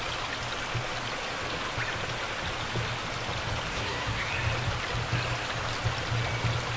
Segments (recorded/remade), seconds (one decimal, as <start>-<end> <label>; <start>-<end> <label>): 0.0-3.7 recorded; 3.7-4.3 remade; 4.3-6.8 recorded